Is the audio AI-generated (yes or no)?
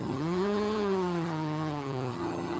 yes